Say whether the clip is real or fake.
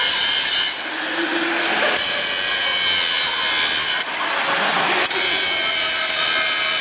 real